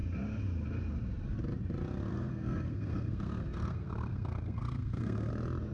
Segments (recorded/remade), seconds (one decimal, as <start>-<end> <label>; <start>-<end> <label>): 0.0-2.1 recorded; 2.1-5.3 remade; 5.3-5.7 recorded